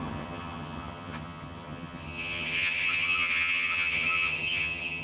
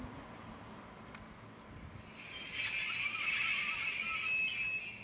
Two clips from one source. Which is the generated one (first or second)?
first